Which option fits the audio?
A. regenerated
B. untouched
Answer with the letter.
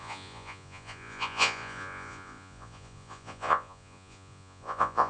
A